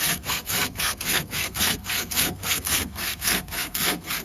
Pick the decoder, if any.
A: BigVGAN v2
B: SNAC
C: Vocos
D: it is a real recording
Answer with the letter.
B